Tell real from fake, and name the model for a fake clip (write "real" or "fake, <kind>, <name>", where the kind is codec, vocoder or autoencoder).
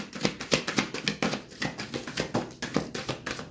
real